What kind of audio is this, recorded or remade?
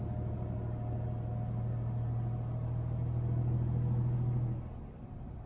recorded